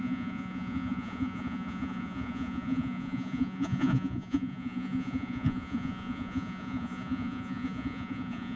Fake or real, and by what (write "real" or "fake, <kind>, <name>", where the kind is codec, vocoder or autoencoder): fake, vocoder, Vocos